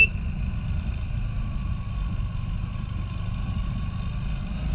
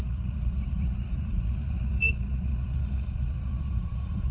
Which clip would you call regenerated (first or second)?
second